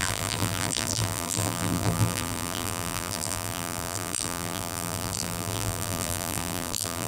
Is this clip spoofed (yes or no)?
yes